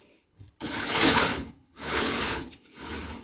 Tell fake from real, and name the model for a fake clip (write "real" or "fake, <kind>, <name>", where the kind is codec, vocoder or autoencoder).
fake, codec, HILCodec